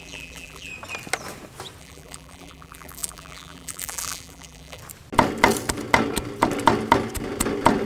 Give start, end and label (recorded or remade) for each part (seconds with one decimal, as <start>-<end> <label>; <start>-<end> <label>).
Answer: 0.0-0.7 remade; 0.7-1.8 recorded; 1.8-4.8 remade; 4.8-7.9 recorded